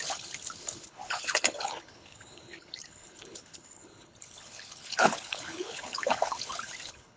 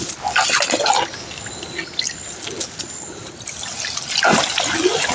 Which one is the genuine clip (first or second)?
second